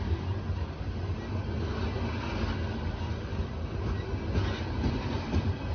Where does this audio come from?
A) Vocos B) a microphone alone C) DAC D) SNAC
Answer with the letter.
B